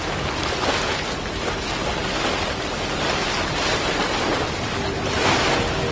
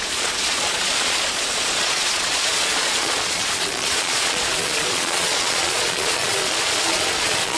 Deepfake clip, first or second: second